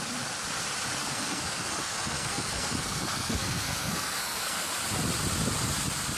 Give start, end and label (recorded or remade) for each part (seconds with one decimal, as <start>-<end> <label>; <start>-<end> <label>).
0.0-1.0 recorded; 1.0-4.7 remade; 4.7-6.2 recorded